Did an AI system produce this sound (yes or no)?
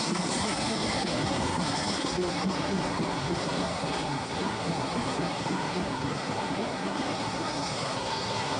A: yes